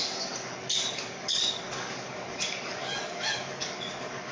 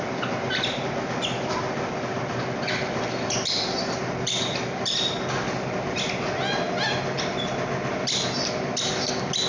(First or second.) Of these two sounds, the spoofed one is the first